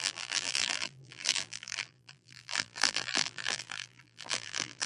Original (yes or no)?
no